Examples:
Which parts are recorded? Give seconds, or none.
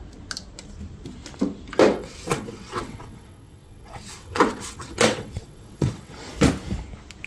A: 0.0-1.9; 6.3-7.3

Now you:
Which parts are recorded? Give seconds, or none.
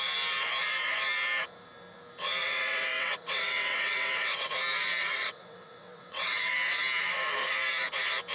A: 0.0-2.4; 4.5-5.0; 6.5-8.3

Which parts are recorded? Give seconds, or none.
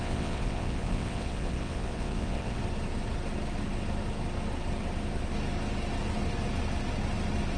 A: 2.6-7.6